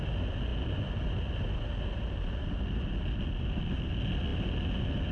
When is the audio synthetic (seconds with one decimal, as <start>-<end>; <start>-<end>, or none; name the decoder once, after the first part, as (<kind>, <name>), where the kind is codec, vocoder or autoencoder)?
none